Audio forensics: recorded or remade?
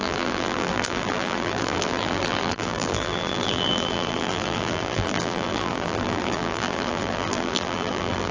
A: remade